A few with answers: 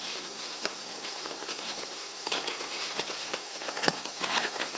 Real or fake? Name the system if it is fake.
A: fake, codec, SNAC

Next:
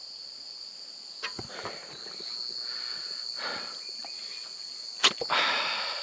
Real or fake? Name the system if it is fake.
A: real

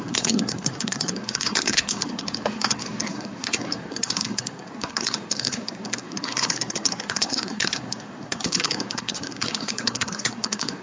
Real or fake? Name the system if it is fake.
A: fake, codec, SNAC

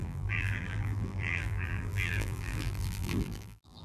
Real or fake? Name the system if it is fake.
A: fake, vocoder, BigVGAN v2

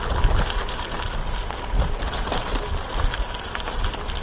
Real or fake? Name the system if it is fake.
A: real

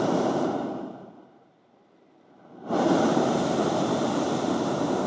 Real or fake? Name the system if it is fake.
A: fake, vocoder, BigVGAN v2